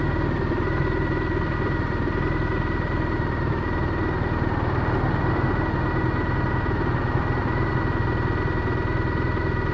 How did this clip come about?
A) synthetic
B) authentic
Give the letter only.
B